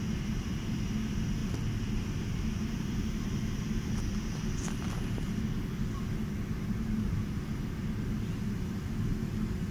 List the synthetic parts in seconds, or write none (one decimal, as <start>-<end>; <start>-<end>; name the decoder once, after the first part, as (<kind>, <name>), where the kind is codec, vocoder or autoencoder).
1.4-4.0 (vocoder, BigVGAN v2)